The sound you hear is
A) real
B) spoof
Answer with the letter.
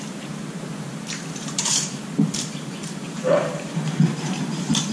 B